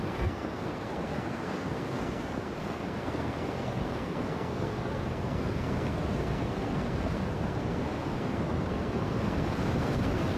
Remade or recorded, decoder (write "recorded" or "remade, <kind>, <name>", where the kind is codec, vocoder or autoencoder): remade, codec, SNAC